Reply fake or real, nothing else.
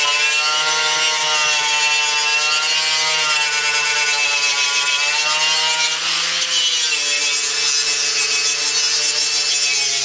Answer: real